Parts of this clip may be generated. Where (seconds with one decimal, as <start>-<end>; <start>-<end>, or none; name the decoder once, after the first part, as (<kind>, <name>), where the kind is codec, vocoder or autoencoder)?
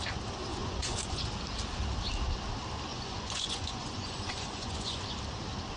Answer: 0.5-1.3 (vocoder, Vocos); 2.9-5.0